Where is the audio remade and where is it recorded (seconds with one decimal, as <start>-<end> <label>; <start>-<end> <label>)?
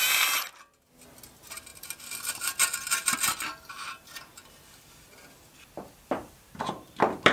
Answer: 0.0-3.0 recorded; 3.0-6.7 remade; 6.7-7.3 recorded